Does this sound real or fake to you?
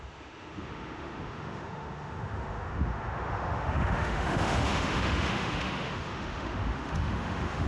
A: fake